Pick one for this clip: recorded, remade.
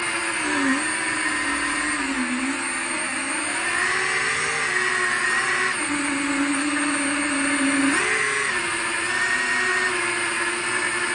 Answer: recorded